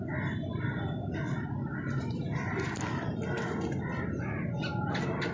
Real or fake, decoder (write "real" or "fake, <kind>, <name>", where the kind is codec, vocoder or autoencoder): real